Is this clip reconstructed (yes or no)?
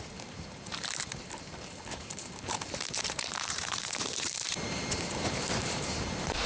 yes